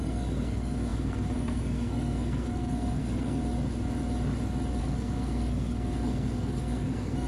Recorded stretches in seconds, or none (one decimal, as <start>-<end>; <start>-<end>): 3.4-4.8